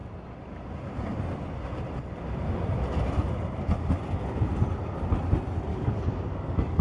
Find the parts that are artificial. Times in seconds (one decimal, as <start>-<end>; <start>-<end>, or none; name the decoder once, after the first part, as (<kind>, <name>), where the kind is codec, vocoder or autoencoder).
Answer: 5.7-6.8 (codec, DAC)

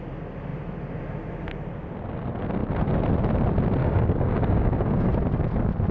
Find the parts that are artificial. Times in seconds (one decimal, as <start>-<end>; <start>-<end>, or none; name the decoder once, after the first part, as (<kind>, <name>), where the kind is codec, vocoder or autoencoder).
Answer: 3.8-5.1 (codec, DAC)

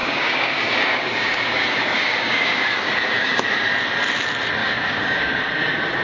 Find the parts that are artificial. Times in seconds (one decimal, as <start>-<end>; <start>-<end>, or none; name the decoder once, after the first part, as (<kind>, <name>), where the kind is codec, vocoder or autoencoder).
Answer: 0.0-3.6 (codec, DAC); 4.6-5.4